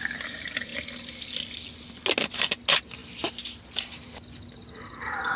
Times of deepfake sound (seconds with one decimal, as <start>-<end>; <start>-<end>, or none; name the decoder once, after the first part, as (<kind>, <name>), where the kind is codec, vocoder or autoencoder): none